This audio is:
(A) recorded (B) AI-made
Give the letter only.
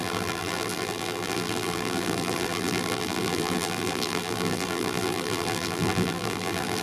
B